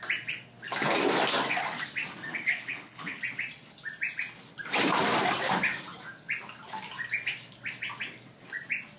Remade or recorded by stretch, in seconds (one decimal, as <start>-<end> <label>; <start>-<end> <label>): 0.0-2.3 recorded; 2.3-3.2 remade; 3.2-9.0 recorded